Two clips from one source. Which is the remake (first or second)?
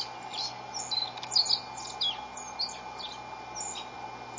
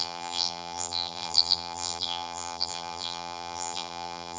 second